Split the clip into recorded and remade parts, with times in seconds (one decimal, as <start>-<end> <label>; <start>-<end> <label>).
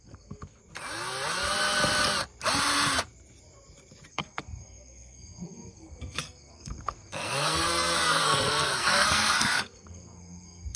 0.0-0.6 remade; 0.6-4.1 recorded; 4.1-10.8 remade